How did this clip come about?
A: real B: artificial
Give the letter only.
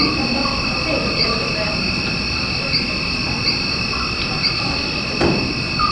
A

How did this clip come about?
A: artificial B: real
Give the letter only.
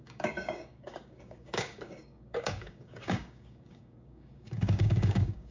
A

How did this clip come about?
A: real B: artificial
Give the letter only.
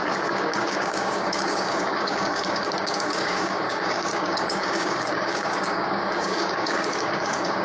B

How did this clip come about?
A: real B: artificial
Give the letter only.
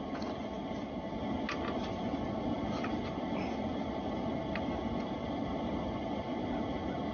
A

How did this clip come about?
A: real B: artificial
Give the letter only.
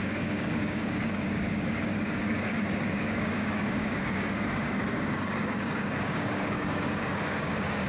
B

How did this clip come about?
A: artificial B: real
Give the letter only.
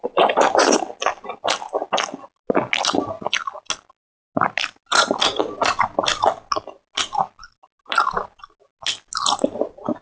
B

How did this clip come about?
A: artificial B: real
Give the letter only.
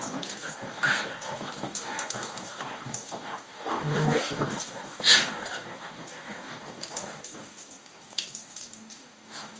A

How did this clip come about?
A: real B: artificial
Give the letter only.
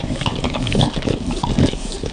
B